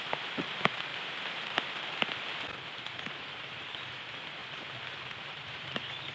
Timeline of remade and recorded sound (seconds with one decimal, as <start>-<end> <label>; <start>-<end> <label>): 0.0-4.4 recorded; 4.4-6.1 remade